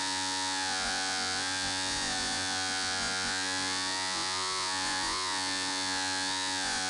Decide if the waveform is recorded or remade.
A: remade